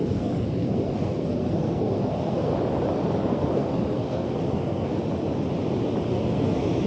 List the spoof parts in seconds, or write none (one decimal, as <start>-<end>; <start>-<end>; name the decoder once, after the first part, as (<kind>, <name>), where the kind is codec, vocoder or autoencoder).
0.0-2.5 (codec, SNAC); 3.3-4.9; 6.1-6.9